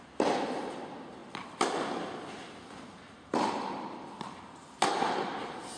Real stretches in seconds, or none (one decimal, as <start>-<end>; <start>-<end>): 0.0-5.8